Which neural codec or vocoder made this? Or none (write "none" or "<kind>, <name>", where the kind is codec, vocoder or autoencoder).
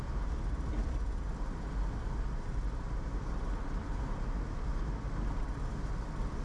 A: none